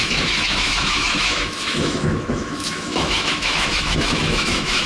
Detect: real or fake fake